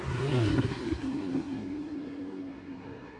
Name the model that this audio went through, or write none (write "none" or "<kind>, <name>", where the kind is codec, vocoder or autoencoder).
codec, SNAC